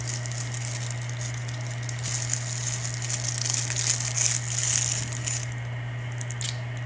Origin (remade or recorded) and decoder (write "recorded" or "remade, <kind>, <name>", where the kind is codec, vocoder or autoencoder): recorded